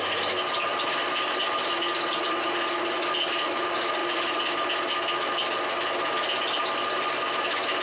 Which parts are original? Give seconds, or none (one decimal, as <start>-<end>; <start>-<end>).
0.0-7.8